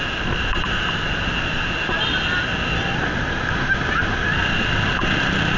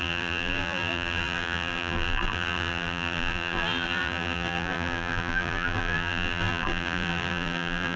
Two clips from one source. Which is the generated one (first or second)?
second